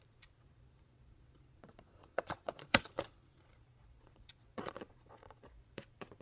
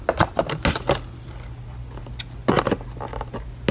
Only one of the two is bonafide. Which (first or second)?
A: second